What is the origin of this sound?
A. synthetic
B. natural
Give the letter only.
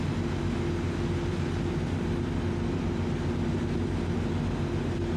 B